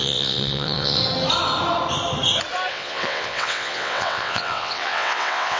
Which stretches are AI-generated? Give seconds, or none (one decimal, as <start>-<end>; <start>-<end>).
0.0-1.0; 2.7-5.6